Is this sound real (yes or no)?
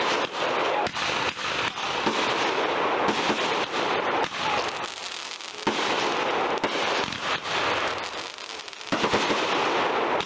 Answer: yes